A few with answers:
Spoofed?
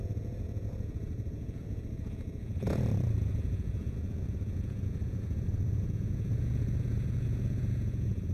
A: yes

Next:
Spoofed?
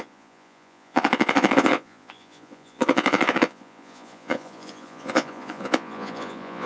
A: yes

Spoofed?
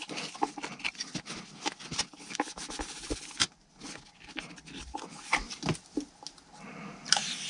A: no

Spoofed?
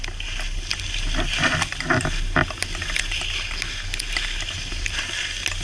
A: no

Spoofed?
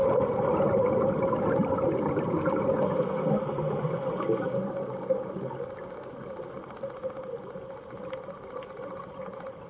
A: no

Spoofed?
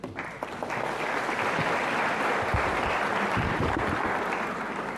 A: no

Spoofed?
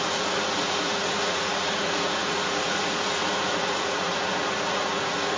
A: yes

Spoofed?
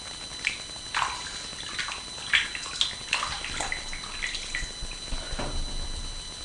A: no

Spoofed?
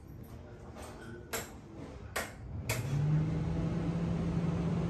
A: no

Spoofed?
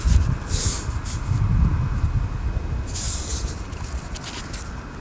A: no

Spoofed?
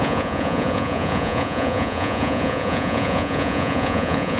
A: yes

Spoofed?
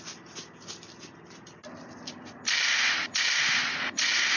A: no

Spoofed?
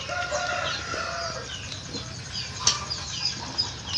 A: no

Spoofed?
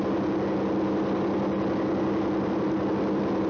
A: no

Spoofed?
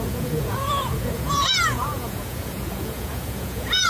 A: yes